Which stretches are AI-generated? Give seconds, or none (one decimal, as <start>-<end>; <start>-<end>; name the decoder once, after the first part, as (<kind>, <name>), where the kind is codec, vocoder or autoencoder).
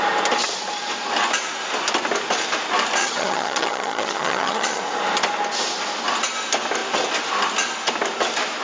3.0-4.8 (vocoder, HiFi-GAN)